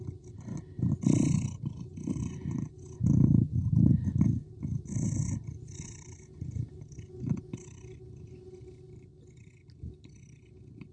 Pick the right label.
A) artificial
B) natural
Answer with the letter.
B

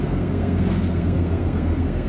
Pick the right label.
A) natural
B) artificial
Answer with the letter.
B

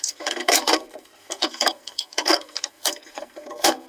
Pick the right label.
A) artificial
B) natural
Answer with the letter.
A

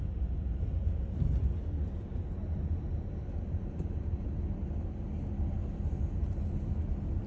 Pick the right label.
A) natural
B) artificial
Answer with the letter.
A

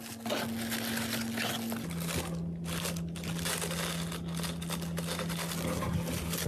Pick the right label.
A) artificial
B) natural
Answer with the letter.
B